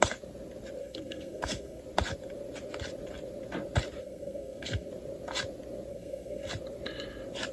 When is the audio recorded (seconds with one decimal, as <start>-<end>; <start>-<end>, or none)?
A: 0.0-0.8; 1.8-4.0; 4.9-5.9; 6.5-7.5